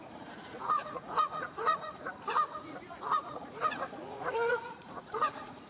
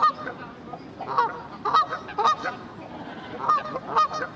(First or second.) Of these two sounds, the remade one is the first